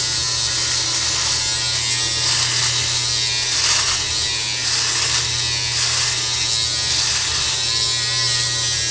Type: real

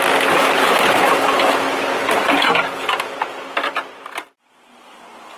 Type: real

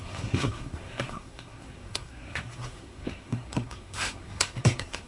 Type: fake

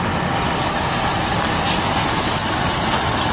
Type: real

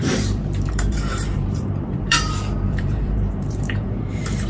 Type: fake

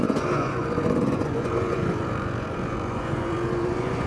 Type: fake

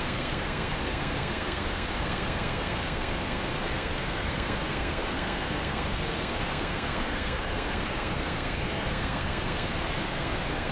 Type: fake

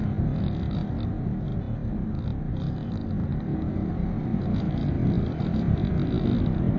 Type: real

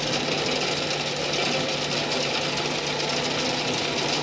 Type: real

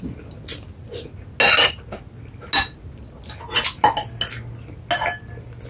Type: real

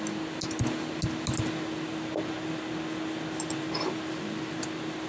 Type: real